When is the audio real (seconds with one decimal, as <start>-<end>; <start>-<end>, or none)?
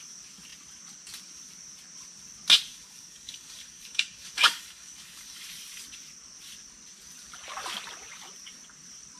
0.0-2.7; 5.4-9.2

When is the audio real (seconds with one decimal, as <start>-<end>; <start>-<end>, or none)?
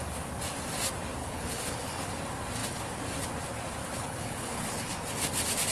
0.0-1.2; 2.1-3.8; 4.9-5.7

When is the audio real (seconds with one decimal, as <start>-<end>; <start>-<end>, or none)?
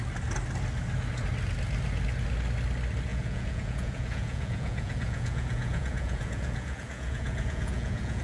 0.0-3.1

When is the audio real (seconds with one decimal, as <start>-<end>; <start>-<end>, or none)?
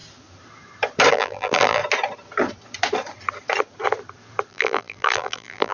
0.0-1.1; 1.8-4.5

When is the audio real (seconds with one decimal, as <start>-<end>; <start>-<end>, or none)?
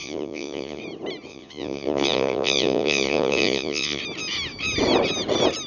0.8-1.3; 4.0-5.7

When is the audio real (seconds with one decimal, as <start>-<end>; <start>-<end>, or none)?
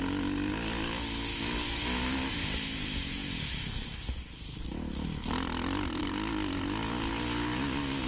0.0-1.3; 2.3-8.1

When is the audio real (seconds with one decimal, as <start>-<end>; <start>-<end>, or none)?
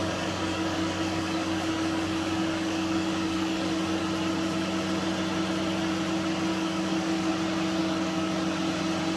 4.0-6.5; 7.3-7.8; 8.3-9.2